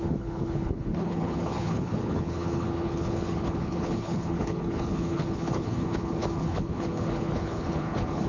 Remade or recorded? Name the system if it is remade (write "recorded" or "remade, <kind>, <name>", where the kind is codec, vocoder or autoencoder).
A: remade, codec, HILCodec